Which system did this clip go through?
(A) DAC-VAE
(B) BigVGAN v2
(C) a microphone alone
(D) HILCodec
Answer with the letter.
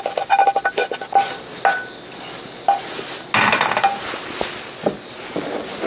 C